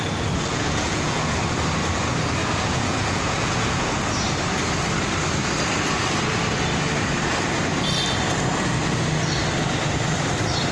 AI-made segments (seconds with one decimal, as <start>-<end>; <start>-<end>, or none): 0.5-1.4; 2.4-3.9

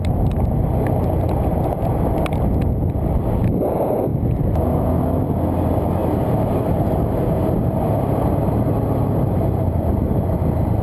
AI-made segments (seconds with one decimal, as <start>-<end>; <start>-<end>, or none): 6.0-10.4

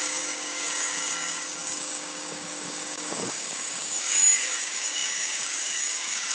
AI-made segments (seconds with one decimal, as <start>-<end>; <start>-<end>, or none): 0.0-6.3

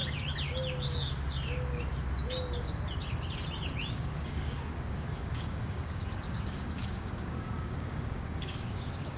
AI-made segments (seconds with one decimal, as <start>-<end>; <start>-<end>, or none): 3.9-9.2

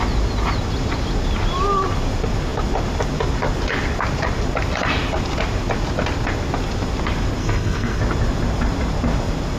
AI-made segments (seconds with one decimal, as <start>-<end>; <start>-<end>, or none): 7.4-8.0

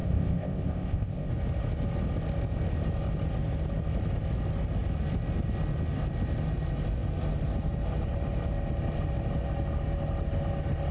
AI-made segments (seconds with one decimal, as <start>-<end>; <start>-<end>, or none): 0.0-1.3